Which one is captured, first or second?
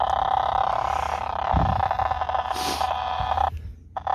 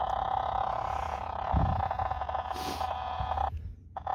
first